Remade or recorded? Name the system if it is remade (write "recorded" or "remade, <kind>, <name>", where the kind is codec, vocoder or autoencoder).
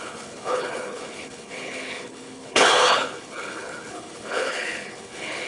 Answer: remade, codec, HILCodec